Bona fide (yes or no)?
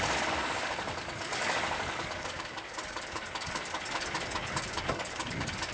no